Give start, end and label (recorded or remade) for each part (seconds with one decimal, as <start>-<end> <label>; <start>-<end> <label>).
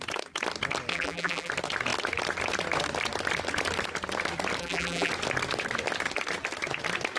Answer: 0.0-0.9 recorded; 0.9-1.5 remade; 1.5-4.6 recorded; 4.6-5.1 remade; 5.1-7.2 recorded